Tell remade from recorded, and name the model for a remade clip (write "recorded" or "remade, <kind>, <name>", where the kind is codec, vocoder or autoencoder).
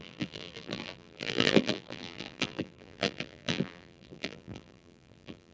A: remade, vocoder, BigVGAN v2